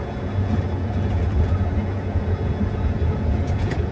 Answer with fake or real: fake